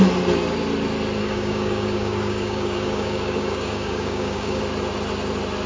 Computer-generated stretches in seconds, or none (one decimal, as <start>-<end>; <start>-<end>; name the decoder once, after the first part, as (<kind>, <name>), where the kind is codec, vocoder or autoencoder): 1.2-4.6 (codec, DAC)